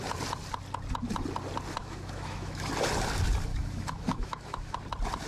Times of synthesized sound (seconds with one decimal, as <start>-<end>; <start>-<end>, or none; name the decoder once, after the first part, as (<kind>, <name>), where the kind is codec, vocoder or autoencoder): 1.8-2.7 (autoencoder, DAC-VAE); 3.5-4.8